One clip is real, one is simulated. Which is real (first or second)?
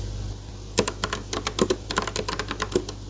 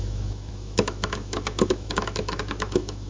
first